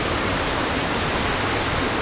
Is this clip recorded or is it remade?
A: recorded